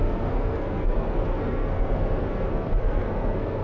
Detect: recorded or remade remade